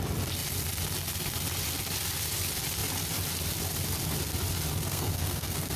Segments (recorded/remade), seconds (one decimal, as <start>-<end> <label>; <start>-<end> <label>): 0.0-4.9 recorded; 4.9-5.8 remade